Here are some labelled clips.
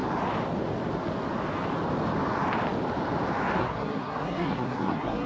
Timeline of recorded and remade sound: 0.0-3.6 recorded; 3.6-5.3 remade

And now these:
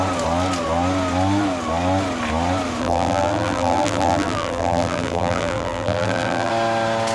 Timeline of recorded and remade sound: 0.0-2.8 recorded; 2.8-6.5 remade; 6.5-7.1 recorded

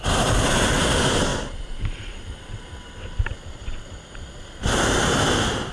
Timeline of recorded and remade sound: 0.0-5.7 recorded

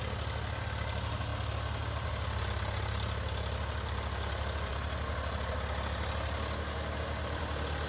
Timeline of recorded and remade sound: 0.0-7.9 recorded